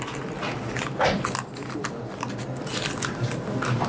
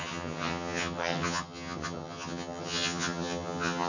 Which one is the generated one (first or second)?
second